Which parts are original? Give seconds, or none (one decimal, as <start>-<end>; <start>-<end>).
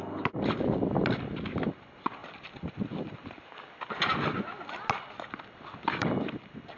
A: 0.0-6.8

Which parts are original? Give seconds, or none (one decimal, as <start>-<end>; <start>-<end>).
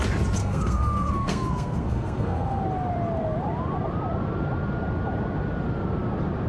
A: 0.0-0.4; 2.6-6.5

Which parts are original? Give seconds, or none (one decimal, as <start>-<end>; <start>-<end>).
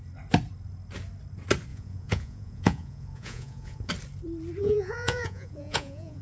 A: 0.0-1.7; 3.9-4.6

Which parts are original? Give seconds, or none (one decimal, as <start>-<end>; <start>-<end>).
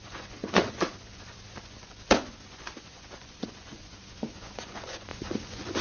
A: none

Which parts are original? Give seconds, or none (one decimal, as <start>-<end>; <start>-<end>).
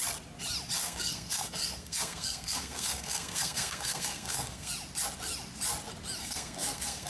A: 0.0-0.8; 4.7-6.2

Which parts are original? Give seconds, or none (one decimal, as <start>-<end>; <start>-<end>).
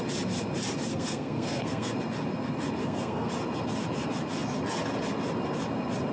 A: 0.0-0.9; 1.9-2.8; 3.3-6.1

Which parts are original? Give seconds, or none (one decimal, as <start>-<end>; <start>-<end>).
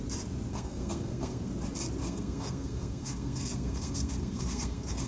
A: 0.0-0.5; 1.5-2.0